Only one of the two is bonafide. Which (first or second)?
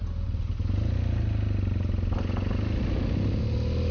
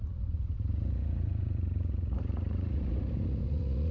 first